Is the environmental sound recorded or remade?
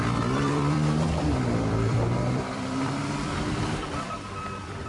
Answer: remade